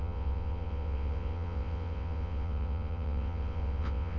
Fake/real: fake